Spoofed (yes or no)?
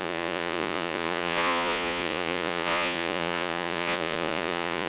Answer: yes